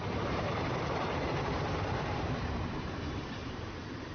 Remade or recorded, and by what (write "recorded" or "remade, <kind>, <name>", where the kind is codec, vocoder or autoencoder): remade, vocoder, BigVGAN v2